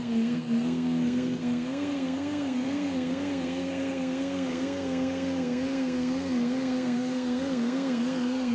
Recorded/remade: remade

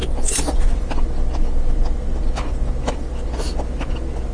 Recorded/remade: recorded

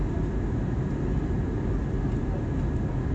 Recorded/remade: recorded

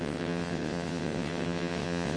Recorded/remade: remade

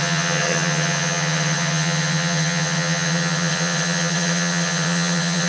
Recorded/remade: remade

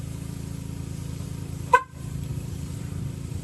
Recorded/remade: remade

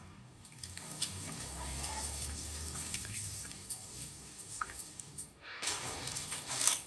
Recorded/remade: remade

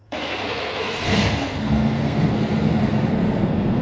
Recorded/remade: remade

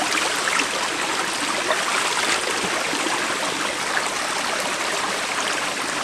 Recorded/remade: recorded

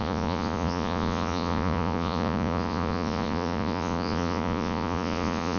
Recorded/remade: remade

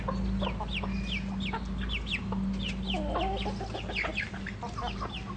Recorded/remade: recorded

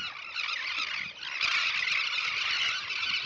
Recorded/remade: recorded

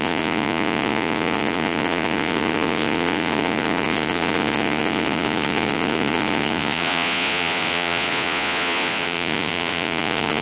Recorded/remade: remade